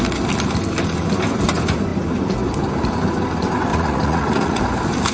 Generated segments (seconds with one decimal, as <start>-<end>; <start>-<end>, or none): 3.7-4.6